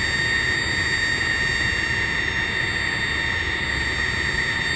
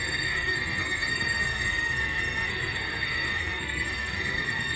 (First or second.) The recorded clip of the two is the first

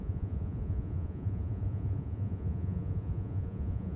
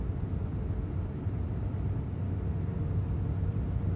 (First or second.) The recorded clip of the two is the second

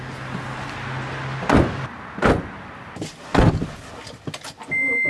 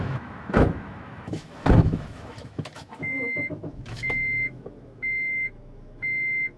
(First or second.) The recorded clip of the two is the first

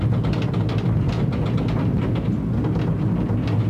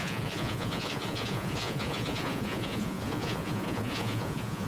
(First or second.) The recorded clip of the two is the first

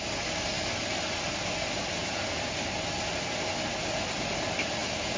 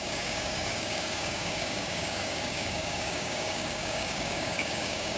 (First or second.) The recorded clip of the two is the first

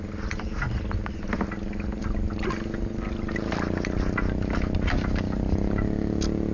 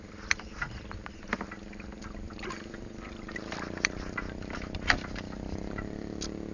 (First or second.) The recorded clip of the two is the first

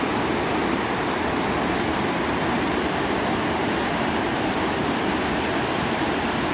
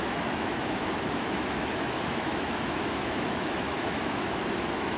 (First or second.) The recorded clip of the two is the first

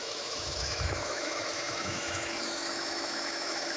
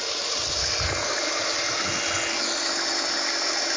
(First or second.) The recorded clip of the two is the second